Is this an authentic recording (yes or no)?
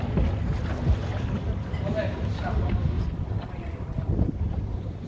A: yes